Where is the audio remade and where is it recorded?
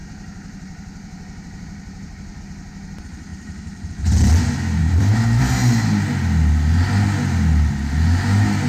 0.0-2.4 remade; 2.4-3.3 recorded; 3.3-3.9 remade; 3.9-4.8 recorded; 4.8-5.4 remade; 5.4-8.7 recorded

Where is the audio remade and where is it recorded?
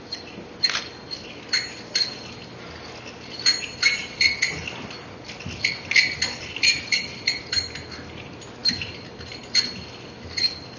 0.0-10.8 recorded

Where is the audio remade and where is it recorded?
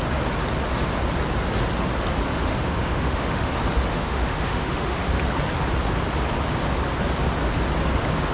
0.0-2.3 recorded; 2.3-3.5 remade; 3.5-3.9 recorded; 3.9-5.0 remade; 5.0-8.3 recorded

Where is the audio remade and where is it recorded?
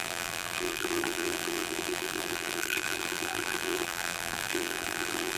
0.0-5.4 remade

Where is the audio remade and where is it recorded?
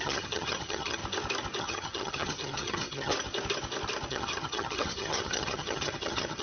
0.0-1.0 remade; 1.0-1.6 recorded; 1.6-3.1 remade; 3.1-4.1 recorded; 4.1-6.4 remade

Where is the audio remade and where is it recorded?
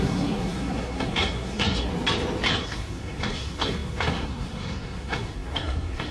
0.0-1.9 remade; 1.9-2.6 recorded; 2.6-6.1 remade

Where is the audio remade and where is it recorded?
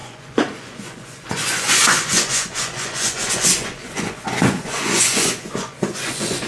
0.0-6.5 remade